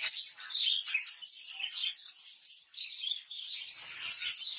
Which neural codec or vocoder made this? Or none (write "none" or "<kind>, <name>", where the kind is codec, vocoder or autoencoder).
vocoder, BigVGAN v2